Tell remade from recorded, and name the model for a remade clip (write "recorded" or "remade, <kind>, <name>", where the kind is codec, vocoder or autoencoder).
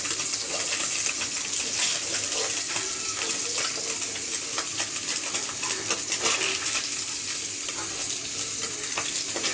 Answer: recorded